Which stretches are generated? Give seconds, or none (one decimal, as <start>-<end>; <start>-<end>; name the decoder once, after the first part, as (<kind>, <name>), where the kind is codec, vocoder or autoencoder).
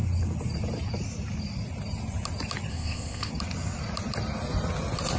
2.7-3.3 (codec, ZipCodec)